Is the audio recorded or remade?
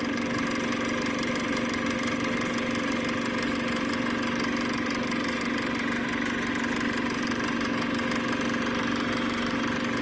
recorded